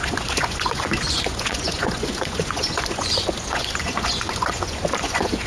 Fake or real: fake